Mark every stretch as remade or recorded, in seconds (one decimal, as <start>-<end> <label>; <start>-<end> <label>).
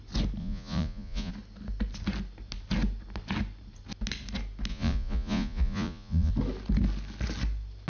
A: 0.0-0.4 recorded; 0.4-1.3 remade; 1.3-4.7 recorded; 4.7-6.3 remade; 6.3-7.9 recorded